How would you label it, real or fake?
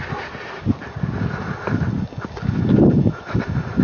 real